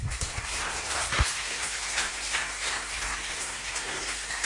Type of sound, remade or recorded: remade